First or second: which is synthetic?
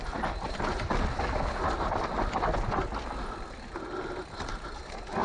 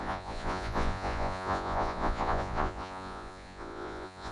second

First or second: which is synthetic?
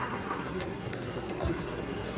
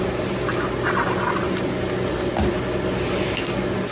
first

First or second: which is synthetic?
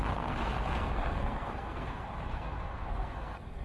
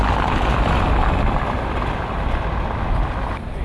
first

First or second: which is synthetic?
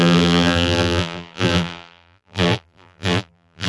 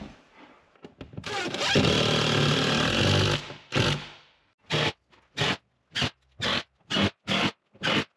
first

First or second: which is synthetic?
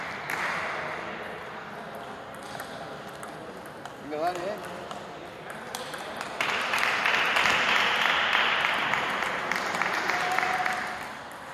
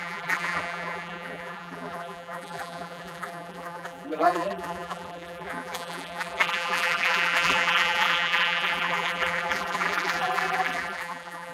second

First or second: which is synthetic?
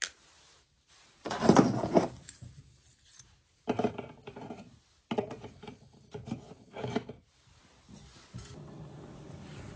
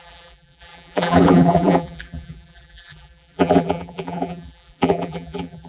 second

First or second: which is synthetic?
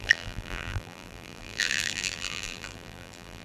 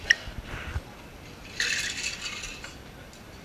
first